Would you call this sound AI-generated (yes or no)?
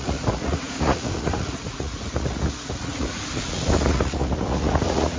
yes